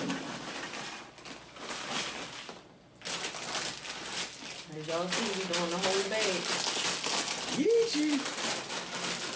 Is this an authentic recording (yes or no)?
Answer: yes